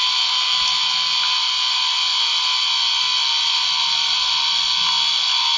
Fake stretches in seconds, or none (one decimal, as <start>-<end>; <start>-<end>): 3.2-4.6